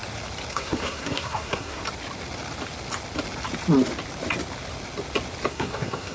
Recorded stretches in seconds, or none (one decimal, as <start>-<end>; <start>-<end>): 0.0-0.5; 1.8-5.5